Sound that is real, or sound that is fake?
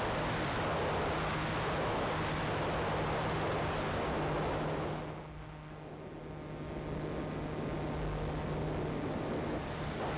real